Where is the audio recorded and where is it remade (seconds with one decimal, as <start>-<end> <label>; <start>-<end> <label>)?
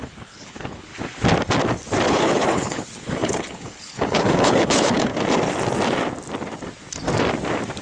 0.0-0.9 remade; 0.9-2.1 recorded; 2.1-5.1 remade; 5.1-7.8 recorded